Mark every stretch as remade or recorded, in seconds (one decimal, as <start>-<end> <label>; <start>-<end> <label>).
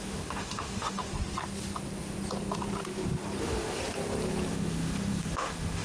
0.0-1.1 remade; 1.1-3.4 recorded; 3.4-3.8 remade; 3.8-4.5 recorded; 4.5-5.8 remade